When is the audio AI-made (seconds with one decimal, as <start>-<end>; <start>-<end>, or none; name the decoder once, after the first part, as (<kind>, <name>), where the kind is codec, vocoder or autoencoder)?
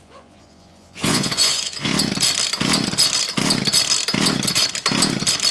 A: 0.0-1.9 (vocoder, Vocos)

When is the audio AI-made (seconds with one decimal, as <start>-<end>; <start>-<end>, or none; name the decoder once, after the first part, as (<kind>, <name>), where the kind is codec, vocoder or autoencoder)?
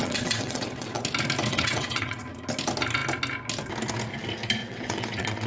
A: 0.0-1.0 (vocoder, WaveNeXt); 1.5-2.2; 4.6-5.5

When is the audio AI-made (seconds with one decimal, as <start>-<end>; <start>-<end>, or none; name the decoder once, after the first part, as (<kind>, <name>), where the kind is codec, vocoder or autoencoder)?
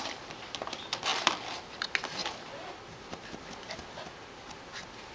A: none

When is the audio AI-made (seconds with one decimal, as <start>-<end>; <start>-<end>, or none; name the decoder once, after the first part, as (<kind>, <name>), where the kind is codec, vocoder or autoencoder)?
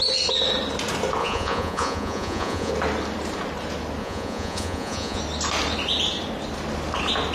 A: 1.2-2.7 (vocoder, Vocos); 4.0-5.2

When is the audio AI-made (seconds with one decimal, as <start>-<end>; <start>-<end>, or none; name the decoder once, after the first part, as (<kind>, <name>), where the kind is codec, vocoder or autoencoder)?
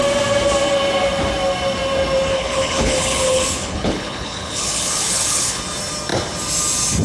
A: 2.3-5.6 (codec, HILCodec)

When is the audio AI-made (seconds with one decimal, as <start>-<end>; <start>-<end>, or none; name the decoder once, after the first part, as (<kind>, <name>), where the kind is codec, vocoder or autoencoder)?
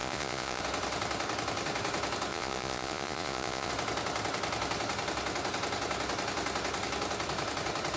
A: 0.0-0.6 (vocoder, Vocos); 2.3-3.7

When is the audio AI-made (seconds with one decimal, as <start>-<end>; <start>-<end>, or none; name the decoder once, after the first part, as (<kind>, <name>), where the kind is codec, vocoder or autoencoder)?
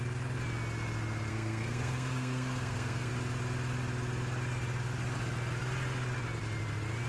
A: 1.3-3.1 (codec, SNAC)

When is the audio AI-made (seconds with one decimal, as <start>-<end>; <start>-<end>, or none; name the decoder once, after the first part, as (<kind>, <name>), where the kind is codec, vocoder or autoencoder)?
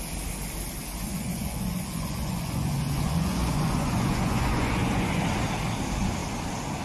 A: 1.1-5.2 (vocoder, Vocos)